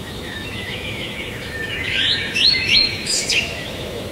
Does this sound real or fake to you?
fake